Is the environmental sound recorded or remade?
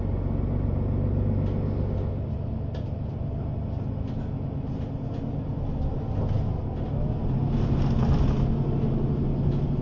recorded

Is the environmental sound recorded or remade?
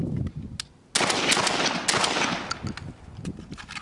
recorded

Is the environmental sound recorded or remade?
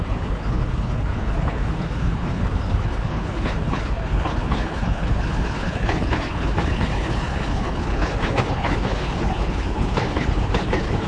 remade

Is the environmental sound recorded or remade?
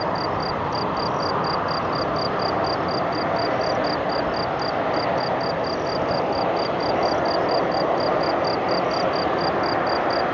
recorded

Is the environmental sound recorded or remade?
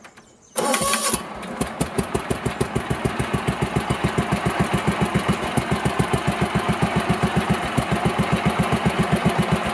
recorded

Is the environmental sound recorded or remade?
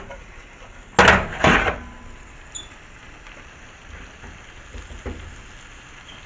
recorded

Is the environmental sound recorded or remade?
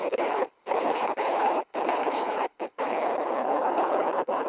remade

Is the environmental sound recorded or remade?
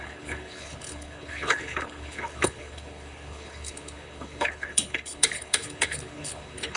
remade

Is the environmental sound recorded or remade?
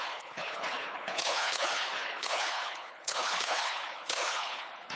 remade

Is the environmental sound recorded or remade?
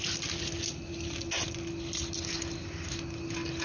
recorded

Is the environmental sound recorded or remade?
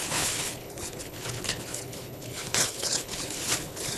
remade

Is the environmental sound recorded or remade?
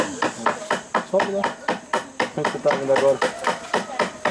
recorded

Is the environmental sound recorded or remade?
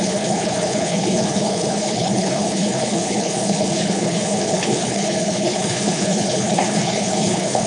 remade